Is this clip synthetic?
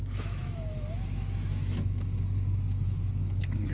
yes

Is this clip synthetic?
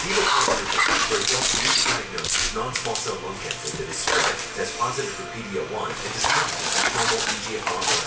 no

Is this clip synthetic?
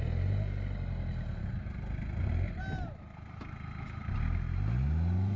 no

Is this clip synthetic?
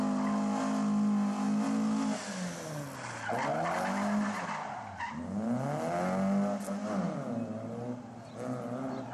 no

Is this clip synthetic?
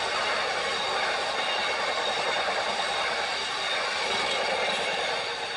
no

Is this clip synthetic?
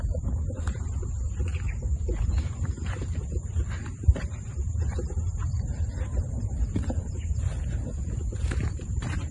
yes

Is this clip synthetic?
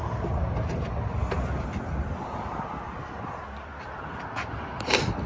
no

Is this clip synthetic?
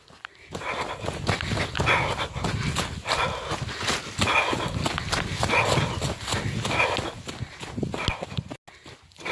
no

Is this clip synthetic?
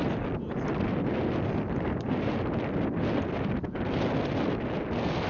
no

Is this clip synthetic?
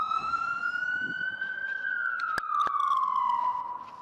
no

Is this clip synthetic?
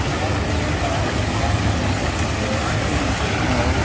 no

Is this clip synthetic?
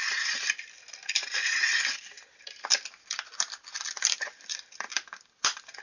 no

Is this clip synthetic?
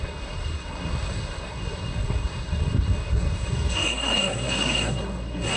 yes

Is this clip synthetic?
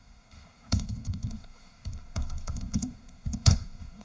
yes